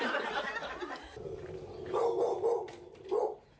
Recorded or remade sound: remade